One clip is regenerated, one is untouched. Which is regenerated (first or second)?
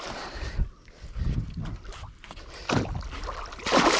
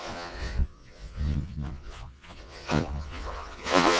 second